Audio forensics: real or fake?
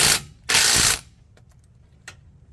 real